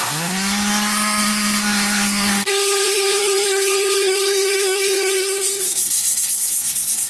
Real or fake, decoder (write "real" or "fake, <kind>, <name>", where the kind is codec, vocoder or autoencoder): fake, codec, SNAC